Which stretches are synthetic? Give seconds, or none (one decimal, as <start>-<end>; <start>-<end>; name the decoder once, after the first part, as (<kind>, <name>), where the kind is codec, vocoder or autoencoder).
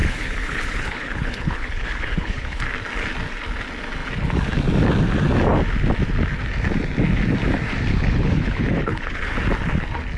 0.0-2.6 (codec, HILCodec); 7.9-9.2